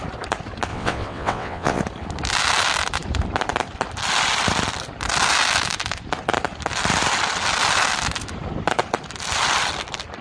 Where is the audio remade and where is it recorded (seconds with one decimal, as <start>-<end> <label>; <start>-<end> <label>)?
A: 0.0-0.7 recorded; 0.7-1.8 remade; 1.8-10.2 recorded